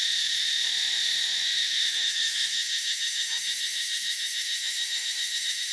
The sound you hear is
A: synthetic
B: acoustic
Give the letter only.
A